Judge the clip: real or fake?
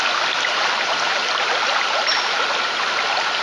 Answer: real